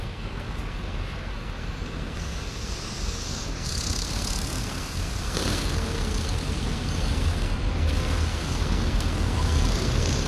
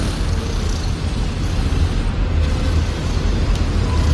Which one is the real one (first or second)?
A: second